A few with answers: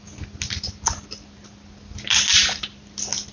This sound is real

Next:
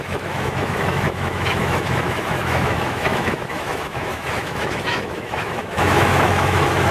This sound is fake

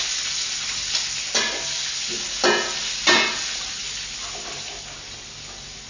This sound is real